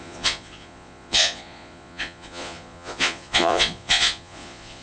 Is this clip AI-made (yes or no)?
yes